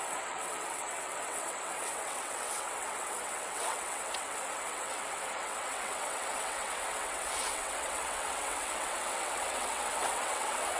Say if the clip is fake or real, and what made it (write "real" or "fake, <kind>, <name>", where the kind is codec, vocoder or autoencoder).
fake, vocoder, WaveNeXt